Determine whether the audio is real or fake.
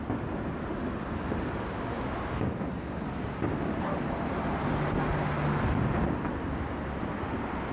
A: real